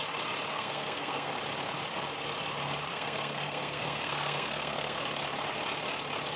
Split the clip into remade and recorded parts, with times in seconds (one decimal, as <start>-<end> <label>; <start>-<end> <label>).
0.0-0.5 recorded; 0.5-1.3 remade; 1.3-2.9 recorded; 2.9-5.0 remade; 5.0-6.4 recorded